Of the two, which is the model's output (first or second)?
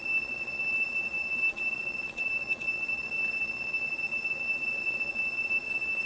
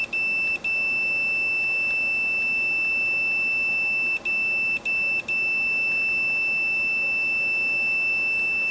first